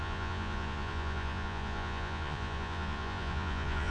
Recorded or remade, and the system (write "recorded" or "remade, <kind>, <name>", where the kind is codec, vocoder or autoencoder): remade, vocoder, Vocos